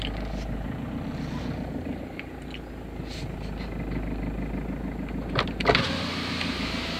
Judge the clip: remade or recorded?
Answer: recorded